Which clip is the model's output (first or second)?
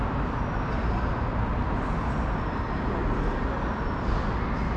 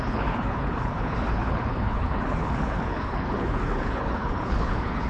second